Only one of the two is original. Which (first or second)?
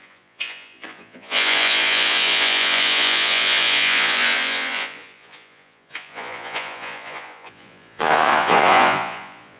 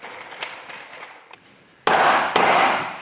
second